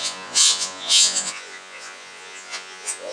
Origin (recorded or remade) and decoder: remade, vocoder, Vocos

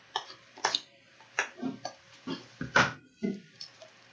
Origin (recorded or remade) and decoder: remade, vocoder, BigVGAN v2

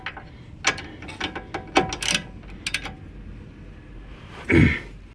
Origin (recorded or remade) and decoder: recorded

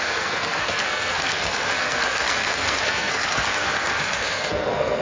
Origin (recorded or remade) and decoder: remade, codec, SNAC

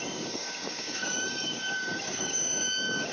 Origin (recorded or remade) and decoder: remade, codec, DAC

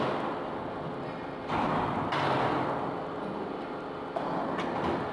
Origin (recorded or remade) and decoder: recorded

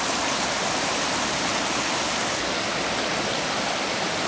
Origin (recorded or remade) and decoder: recorded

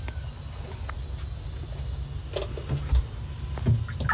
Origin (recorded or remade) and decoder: recorded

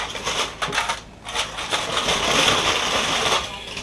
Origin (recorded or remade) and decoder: recorded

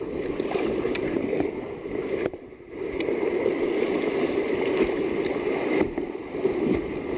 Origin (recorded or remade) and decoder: recorded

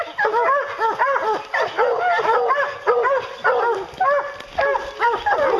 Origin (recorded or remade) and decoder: recorded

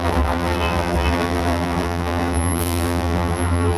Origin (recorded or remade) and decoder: remade, vocoder, BigVGAN v2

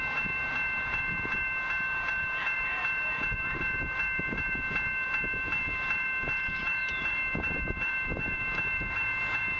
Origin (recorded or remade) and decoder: remade, vocoder, BigVGAN v2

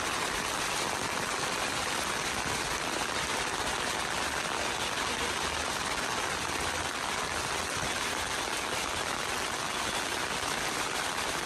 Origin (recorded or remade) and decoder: recorded